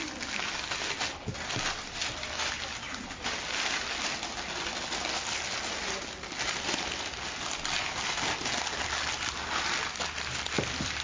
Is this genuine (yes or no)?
yes